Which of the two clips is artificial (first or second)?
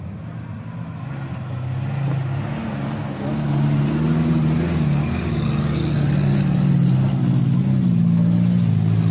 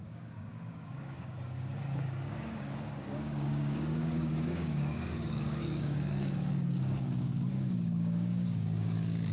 second